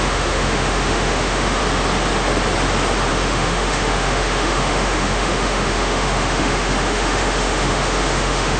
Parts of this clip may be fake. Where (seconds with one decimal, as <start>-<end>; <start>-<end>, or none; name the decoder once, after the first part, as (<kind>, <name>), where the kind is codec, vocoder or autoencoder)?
0.0-1.6 (autoencoder, DAC-VAE); 3.1-8.6